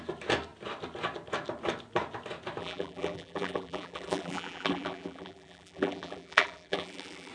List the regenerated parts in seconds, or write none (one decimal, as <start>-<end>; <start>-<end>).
2.6-7.3